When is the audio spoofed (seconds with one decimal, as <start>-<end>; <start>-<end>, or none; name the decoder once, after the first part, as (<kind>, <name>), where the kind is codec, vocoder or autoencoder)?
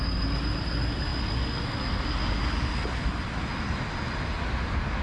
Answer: none